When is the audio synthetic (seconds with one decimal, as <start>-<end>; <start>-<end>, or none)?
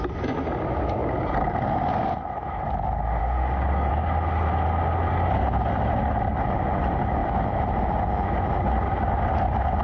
3.2-3.9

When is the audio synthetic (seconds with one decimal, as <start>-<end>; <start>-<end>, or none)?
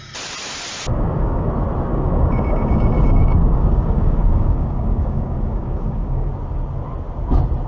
0.9-1.5; 1.9-6.3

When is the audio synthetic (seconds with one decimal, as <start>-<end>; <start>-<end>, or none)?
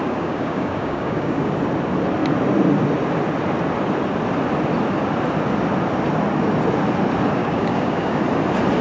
0.0-1.5; 7.4-8.2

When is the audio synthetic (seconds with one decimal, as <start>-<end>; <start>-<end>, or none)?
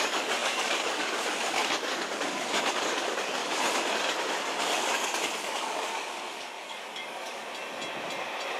0.0-3.4; 4.6-7.4